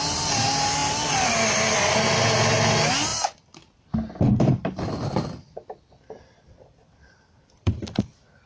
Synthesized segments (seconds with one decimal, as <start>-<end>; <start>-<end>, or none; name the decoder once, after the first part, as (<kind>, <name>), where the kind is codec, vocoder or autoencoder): 0.8-2.0 (vocoder, BigVGAN v2); 3.1-8.0